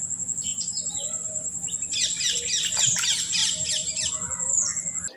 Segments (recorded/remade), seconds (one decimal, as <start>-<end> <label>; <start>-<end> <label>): 0.0-0.5 recorded; 0.5-2.2 remade; 2.2-3.4 recorded; 3.4-4.1 remade; 4.1-5.2 recorded

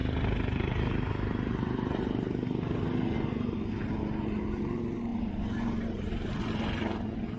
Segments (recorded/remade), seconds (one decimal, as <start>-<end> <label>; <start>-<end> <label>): 0.0-5.1 recorded; 5.1-6.4 remade; 6.4-7.4 recorded

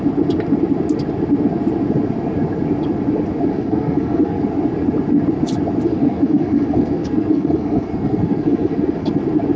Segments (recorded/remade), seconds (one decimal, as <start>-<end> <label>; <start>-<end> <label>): 0.0-3.5 recorded; 3.5-4.4 remade; 4.4-5.9 recorded; 5.9-9.1 remade; 9.1-9.6 recorded

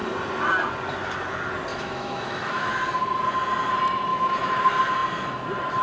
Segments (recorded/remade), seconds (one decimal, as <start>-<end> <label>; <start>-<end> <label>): 0.0-1.7 recorded; 1.7-2.7 remade; 2.7-4.1 recorded; 4.1-4.6 remade; 4.6-5.8 recorded

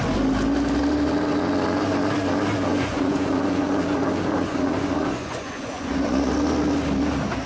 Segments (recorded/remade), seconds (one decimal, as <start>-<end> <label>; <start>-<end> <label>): 0.0-2.7 recorded; 2.7-6.3 remade; 6.3-7.5 recorded

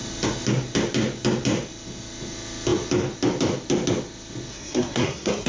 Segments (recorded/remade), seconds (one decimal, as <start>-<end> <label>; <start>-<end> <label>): 0.0-4.5 recorded; 4.5-5.5 remade

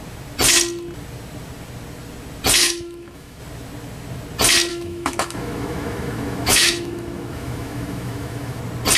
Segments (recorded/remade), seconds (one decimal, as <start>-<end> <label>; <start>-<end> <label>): 0.0-2.6 recorded; 2.6-3.4 remade; 3.4-4.7 recorded; 4.7-8.6 remade; 8.6-9.0 recorded